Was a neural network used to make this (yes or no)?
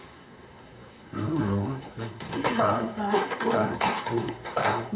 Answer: yes